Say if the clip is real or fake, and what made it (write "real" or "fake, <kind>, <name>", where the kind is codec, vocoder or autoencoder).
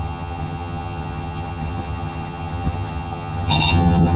fake, vocoder, HiFi-GAN